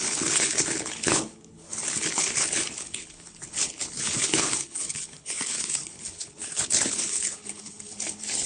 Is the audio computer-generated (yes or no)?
yes